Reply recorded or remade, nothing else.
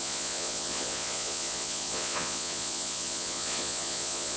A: remade